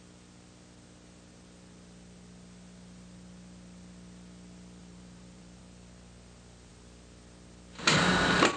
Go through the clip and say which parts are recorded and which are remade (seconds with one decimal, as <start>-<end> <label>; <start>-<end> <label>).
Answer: 0.0-4.8 recorded; 4.8-5.6 remade; 5.6-8.6 recorded